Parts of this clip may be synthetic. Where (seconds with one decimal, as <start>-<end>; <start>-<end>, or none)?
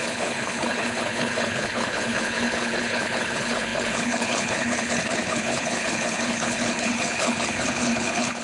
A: 0.0-8.4